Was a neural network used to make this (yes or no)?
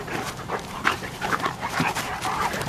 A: yes